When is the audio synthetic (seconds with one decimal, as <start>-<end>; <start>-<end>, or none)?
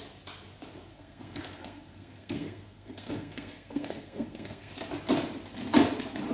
0.9-4.7